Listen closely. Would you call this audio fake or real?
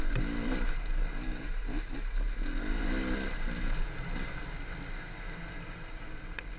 real